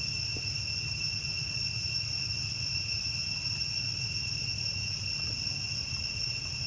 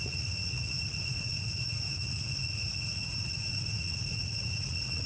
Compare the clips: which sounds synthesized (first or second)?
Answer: second